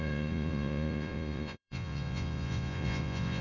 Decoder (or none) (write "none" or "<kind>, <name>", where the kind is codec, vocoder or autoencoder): vocoder, Vocos